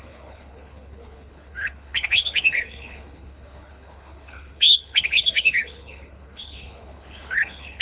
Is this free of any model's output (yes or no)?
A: no